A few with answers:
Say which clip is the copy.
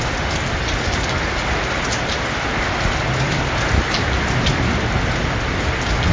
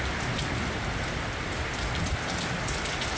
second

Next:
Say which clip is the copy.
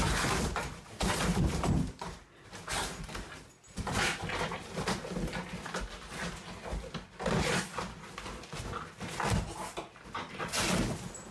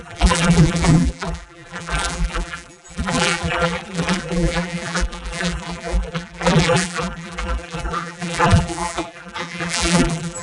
second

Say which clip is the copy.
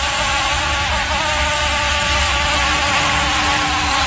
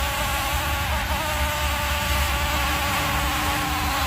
first